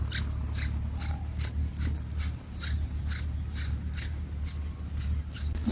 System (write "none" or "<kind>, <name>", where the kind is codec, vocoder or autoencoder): none